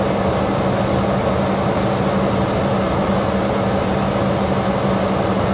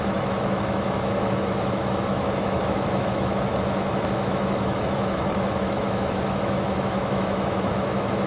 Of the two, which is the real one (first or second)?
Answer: first